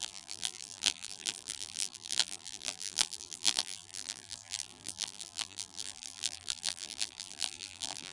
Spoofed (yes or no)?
yes